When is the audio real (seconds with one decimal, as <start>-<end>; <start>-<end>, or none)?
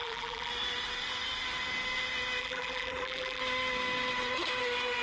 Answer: 0.5-2.4; 3.4-5.0